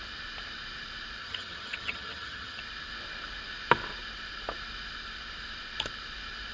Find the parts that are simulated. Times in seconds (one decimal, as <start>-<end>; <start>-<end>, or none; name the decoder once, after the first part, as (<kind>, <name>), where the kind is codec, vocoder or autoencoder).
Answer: 1.2-2.6 (vocoder, HiFi-GAN)